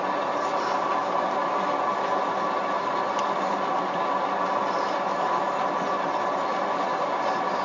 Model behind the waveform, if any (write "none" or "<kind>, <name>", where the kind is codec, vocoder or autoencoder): none